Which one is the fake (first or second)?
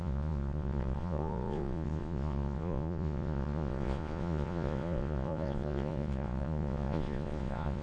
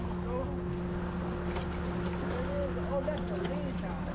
first